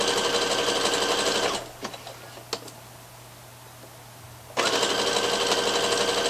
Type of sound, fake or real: real